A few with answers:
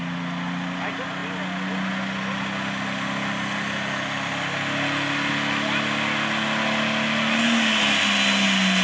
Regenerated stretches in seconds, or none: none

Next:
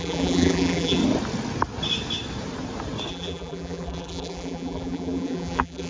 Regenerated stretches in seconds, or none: 0.0-1.0; 3.1-5.9

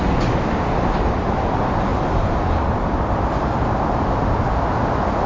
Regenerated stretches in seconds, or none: 1.9-3.9

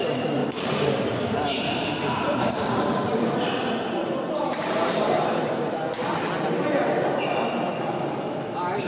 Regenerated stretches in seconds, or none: 0.4-5.3

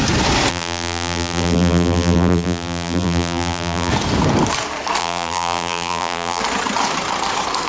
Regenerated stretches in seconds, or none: 0.5-3.9; 5.0-6.4

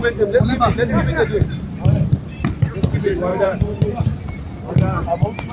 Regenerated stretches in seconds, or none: 0.0-0.5; 3.3-4.7